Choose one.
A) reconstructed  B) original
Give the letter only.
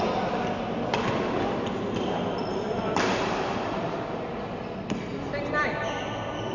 B